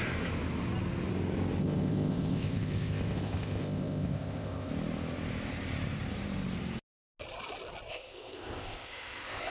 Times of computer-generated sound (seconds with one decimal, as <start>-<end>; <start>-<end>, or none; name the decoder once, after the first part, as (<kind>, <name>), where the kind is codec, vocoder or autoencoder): 1.6-4.7 (codec, ZipCodec); 7.9-9.5